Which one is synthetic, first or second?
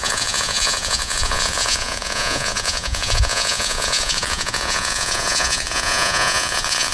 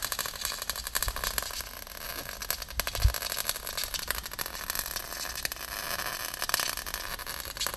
first